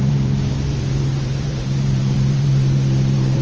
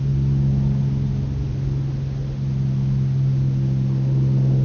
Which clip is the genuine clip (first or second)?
second